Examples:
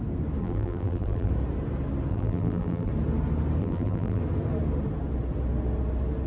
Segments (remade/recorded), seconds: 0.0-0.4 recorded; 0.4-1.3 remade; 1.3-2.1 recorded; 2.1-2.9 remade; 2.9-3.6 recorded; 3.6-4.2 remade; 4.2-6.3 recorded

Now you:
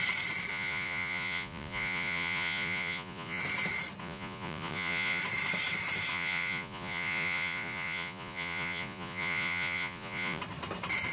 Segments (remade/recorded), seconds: 0.0-0.5 recorded; 0.5-3.4 remade; 3.4-4.0 recorded; 4.0-5.2 remade; 5.2-6.1 recorded; 6.1-10.4 remade; 10.4-11.1 recorded

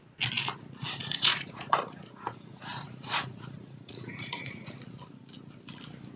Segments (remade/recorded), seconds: 0.0-1.0 recorded; 1.0-4.7 remade; 4.7-6.2 recorded

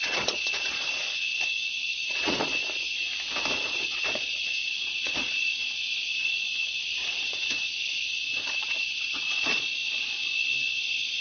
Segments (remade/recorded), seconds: 0.0-2.5 remade; 2.5-3.6 recorded; 3.6-9.8 remade; 9.8-11.2 recorded